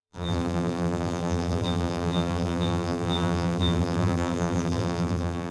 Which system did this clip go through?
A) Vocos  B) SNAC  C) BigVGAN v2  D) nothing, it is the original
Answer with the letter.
C